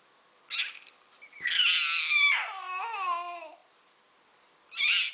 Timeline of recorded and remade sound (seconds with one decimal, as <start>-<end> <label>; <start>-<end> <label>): 0.0-5.1 recorded